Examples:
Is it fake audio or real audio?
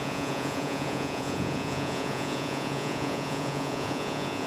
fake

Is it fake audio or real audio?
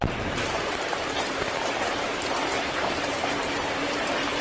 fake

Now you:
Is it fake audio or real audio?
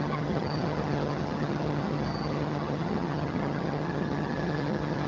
fake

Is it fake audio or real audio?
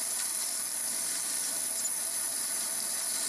fake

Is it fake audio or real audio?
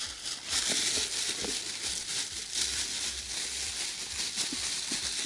real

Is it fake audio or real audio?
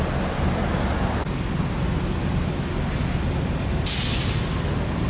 real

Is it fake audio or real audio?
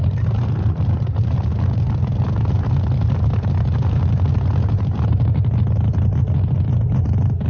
real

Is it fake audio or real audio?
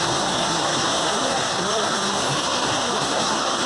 fake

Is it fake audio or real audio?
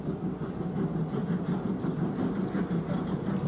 real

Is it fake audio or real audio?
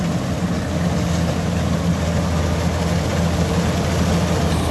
real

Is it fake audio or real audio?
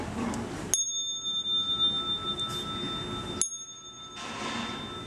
real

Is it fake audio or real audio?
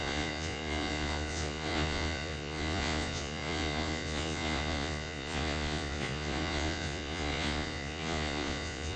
fake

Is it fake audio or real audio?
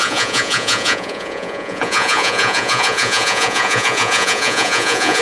fake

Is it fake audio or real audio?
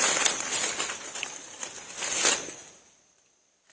fake